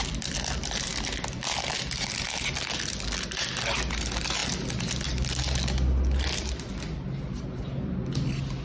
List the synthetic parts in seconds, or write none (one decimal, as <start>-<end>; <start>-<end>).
none